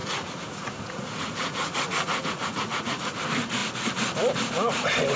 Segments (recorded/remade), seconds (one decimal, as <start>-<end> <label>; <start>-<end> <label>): 0.0-3.1 remade; 3.1-5.2 recorded